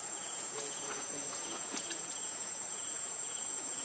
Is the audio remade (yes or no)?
yes